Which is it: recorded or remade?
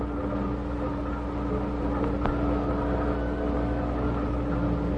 recorded